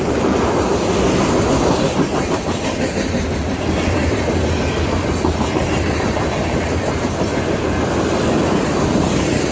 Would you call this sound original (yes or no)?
no